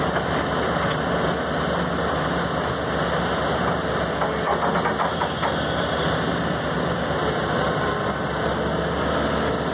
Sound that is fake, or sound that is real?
real